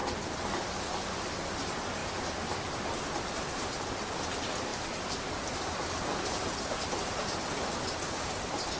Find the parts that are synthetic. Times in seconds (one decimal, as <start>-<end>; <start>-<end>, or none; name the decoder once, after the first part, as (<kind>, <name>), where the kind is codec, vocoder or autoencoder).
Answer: 0.0-1.0 (vocoder, BigVGAN v2); 4.7-8.1

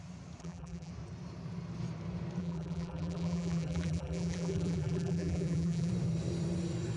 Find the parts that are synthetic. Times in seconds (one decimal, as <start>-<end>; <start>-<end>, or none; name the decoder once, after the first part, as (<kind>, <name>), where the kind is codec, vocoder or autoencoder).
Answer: 0.4-0.9 (vocoder, BigVGAN v2); 2.4-5.9

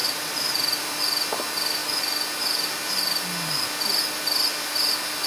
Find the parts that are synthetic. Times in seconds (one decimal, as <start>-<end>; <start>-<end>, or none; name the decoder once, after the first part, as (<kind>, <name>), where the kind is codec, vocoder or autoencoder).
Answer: 0.0-1.0 (vocoder, BigVGAN v2)

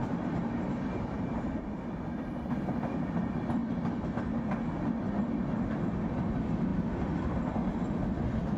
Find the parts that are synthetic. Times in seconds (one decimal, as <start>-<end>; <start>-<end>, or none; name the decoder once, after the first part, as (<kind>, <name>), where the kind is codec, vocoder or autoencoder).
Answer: 0.0-2.0 (vocoder, BigVGAN v2)

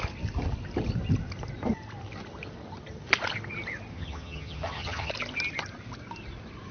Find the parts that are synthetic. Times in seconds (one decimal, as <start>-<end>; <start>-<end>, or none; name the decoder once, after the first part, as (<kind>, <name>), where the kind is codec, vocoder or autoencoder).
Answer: 3.9-5.1 (vocoder, HiFi-GAN)

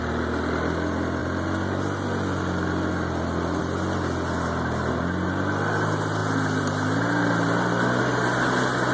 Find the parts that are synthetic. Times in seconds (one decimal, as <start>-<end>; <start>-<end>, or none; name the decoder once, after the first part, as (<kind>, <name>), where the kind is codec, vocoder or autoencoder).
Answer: none

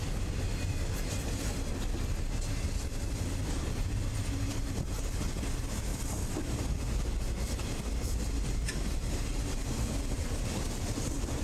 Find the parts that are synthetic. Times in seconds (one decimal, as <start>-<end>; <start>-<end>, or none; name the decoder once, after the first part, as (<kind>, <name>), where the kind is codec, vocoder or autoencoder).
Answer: none